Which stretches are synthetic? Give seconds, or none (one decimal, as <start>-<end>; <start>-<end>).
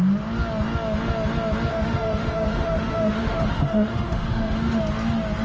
1.7-4.8